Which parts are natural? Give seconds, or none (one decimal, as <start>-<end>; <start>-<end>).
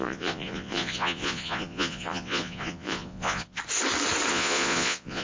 3.6-4.3